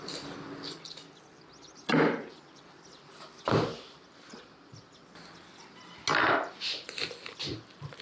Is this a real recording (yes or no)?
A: yes